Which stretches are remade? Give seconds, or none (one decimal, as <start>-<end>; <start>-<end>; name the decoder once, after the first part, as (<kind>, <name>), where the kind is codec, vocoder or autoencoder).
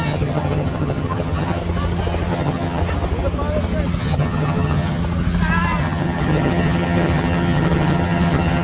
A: 0.0-1.6 (vocoder, HiFi-GAN); 2.3-2.8; 4.0-5.0; 5.8-8.6